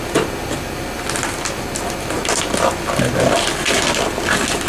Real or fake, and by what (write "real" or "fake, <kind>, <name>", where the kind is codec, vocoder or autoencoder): real